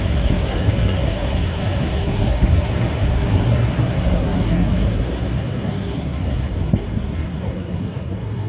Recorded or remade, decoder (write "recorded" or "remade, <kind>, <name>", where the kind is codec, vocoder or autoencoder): remade, codec, SNAC